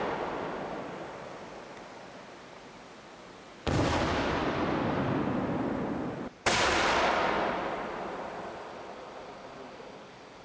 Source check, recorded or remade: recorded